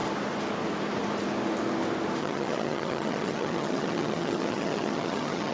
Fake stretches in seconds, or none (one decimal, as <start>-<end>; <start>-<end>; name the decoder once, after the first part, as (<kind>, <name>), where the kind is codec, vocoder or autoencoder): 2.2-5.5 (vocoder, HiFi-GAN)